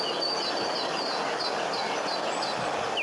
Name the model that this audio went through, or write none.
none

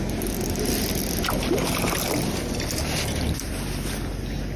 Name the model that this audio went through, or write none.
none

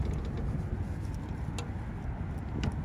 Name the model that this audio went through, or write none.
none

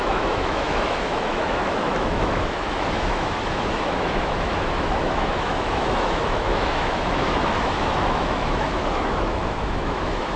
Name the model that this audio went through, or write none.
autoencoder, DAC-VAE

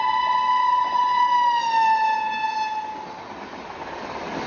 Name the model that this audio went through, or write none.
none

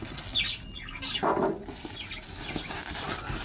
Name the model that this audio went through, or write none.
none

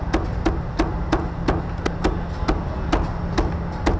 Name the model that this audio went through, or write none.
none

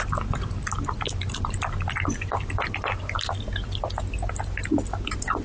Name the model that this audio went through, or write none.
none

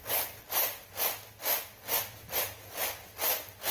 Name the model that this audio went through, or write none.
none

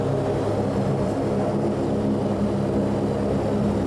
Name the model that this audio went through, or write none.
none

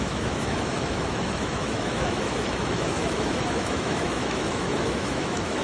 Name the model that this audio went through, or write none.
autoencoder, DAC-VAE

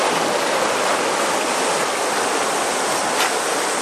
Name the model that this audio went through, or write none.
none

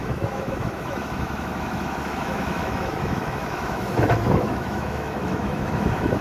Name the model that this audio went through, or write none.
autoencoder, DAC-VAE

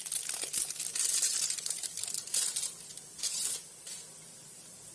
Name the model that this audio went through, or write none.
none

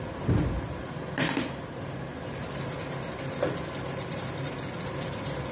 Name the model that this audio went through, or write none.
none